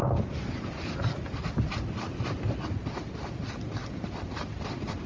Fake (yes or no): no